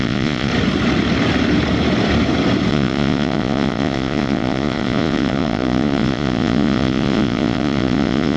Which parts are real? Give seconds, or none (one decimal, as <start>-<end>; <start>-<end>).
0.5-2.7